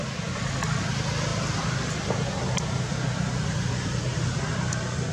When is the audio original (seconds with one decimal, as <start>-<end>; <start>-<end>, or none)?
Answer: 0.0-5.1